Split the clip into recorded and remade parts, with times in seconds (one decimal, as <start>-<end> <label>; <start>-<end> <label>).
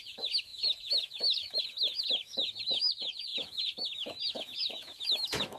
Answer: 0.0-5.6 remade